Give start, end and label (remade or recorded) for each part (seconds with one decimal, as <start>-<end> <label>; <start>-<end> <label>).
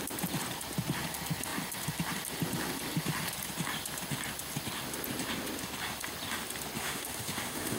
0.0-6.8 recorded; 6.8-7.8 remade